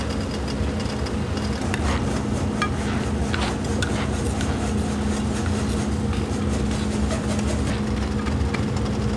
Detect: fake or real real